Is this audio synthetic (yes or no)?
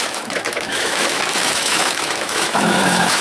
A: yes